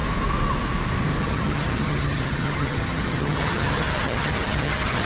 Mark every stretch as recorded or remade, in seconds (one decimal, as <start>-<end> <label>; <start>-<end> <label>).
0.0-1.2 recorded; 1.2-5.1 remade